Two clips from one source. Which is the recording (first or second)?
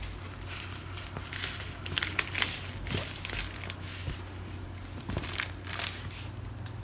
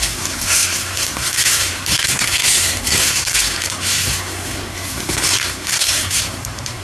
first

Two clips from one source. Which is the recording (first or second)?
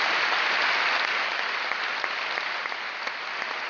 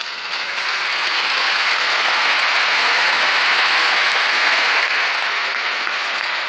first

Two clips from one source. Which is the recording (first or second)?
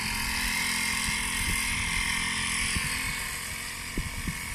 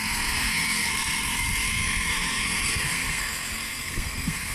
first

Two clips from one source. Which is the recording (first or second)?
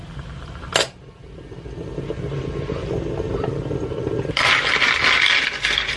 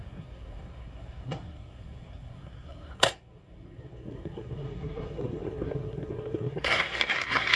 first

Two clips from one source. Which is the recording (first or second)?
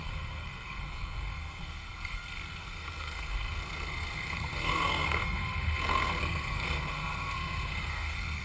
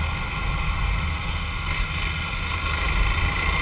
second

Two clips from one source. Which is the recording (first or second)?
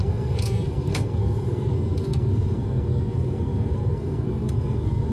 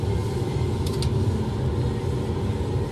second